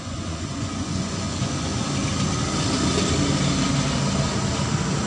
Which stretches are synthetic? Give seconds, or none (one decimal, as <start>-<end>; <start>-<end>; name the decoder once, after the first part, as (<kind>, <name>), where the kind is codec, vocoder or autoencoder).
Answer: 0.0-1.7 (vocoder, Vocos)